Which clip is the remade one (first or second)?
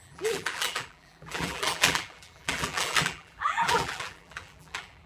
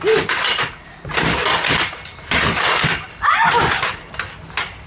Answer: first